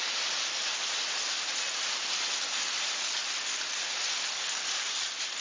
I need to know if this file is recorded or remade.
recorded